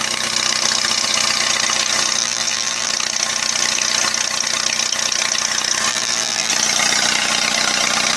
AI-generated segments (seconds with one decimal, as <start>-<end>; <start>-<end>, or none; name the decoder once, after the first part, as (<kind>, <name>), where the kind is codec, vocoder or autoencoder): 2.2-2.9 (vocoder, BigVGAN v2); 5.9-6.5